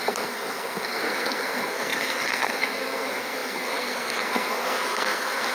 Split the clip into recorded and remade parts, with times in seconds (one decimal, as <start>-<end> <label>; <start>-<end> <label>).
0.0-5.5 remade